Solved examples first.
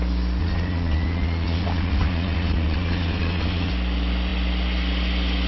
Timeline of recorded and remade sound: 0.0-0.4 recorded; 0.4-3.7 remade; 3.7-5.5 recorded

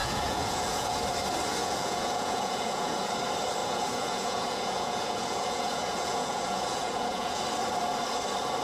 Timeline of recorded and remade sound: 0.0-1.0 remade; 1.0-1.6 recorded; 1.6-3.1 remade; 3.1-3.6 recorded; 3.6-7.4 remade; 7.4-8.6 recorded